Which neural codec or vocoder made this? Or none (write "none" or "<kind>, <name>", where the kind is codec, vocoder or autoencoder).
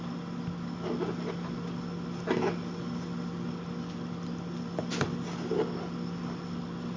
none